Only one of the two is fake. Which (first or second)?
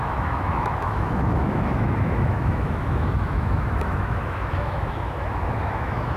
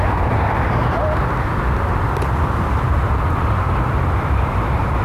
first